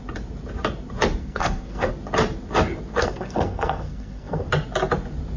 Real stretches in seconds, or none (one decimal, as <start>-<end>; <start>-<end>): 0.0-1.2; 1.9-2.9; 4.5-5.4